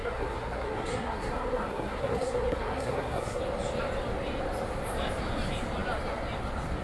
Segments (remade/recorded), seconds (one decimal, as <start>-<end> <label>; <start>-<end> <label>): 0.0-3.4 remade; 3.4-6.8 recorded